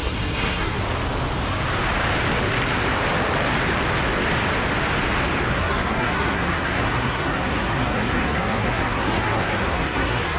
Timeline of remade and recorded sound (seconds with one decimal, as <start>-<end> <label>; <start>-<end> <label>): 0.0-0.8 remade; 0.8-5.5 recorded; 5.5-10.4 remade